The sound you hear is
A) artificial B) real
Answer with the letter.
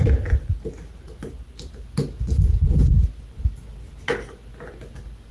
B